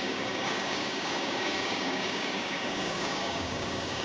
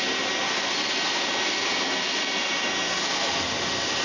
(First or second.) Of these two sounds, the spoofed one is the first